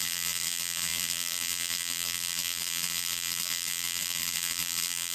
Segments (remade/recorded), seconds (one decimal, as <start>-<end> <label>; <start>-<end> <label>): 0.0-5.1 remade